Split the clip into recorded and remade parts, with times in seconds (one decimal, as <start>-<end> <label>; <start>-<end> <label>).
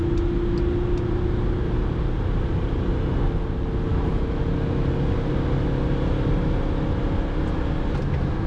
0.0-3.9 recorded; 3.9-4.4 remade; 4.4-8.5 recorded